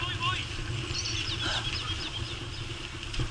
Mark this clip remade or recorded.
recorded